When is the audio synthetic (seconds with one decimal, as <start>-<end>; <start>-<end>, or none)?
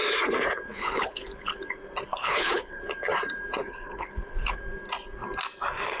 0.7-1.6; 2.1-2.8; 3.6-4.6